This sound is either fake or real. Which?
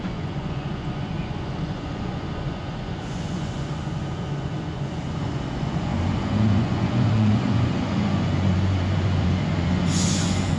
fake